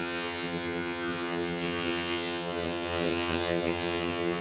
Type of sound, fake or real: fake